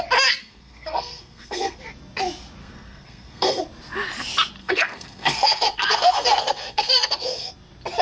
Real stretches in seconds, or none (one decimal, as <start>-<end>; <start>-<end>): 0.0-0.4; 1.8-2.6; 3.6-4.6; 7.5-8.0